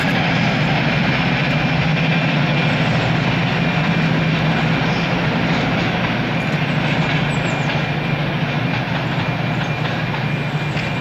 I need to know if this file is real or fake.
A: real